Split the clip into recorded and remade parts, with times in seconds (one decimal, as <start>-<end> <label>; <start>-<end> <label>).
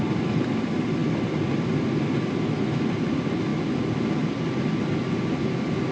0.0-5.9 recorded